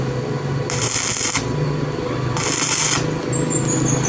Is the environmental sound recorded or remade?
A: recorded